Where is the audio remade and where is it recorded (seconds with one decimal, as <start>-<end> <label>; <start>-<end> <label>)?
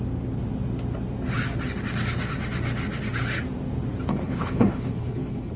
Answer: 0.0-4.1 recorded; 4.1-5.6 remade